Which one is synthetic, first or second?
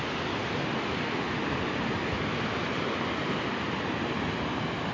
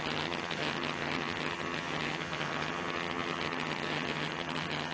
second